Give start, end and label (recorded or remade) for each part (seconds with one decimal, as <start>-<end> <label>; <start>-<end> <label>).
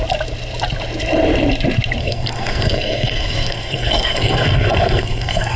0.0-2.0 recorded; 2.0-5.6 remade